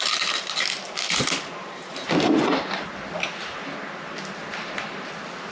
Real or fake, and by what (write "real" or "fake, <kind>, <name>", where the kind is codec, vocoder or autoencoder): real